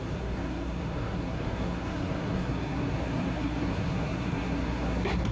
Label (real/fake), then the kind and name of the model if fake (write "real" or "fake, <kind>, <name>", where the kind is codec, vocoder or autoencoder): fake, codec, SNAC